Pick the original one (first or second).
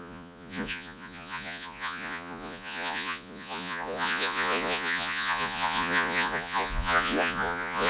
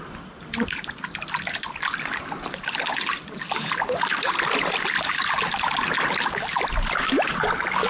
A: second